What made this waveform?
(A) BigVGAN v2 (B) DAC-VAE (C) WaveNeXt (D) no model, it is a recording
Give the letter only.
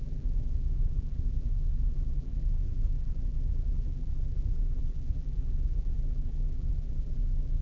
A